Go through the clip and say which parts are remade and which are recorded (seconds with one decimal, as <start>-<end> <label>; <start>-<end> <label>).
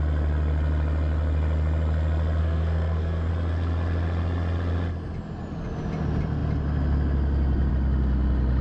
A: 0.0-2.4 recorded; 2.4-3.3 remade; 3.3-8.6 recorded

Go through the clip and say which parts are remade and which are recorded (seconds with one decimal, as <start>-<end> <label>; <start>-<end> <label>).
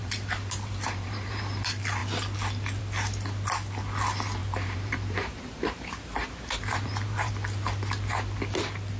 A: 0.0-1.4 remade; 1.4-4.4 recorded; 4.4-7.3 remade; 7.3-9.0 recorded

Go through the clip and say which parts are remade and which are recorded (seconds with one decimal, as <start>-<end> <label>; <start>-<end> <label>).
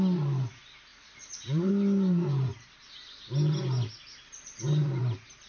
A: 0.0-0.9 recorded; 0.9-1.7 remade; 1.7-5.5 recorded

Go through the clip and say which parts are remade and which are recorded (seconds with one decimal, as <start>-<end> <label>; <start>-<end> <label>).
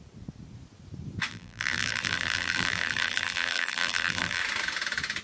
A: 0.0-1.3 recorded; 1.3-4.4 remade; 4.4-5.2 recorded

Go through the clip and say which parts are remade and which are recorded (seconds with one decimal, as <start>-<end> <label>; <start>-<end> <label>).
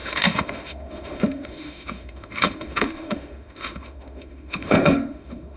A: 0.0-5.6 remade